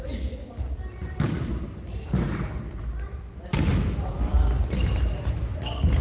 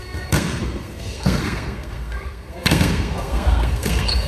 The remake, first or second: second